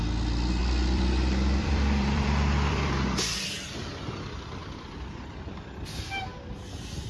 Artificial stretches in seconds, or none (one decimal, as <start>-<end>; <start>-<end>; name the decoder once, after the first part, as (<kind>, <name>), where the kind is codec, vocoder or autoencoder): 0.6-4.0 (vocoder, BigVGAN v2); 4.6-5.4